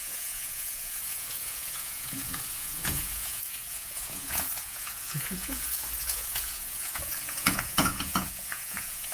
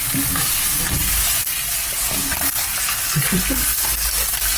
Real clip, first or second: second